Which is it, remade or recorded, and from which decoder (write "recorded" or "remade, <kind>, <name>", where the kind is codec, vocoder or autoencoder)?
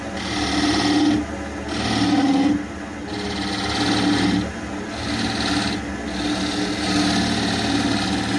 recorded